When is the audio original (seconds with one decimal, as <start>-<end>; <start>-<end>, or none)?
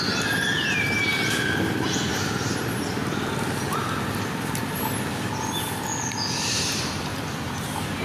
0.0-8.0